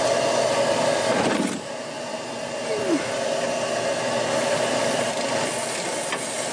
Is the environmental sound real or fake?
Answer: real